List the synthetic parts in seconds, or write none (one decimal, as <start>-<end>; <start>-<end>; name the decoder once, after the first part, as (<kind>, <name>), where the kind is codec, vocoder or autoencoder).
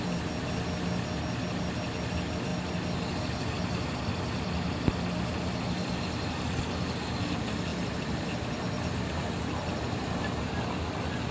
none